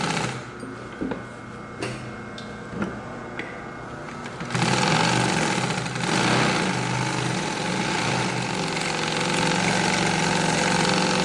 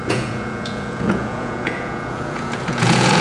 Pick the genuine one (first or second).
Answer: first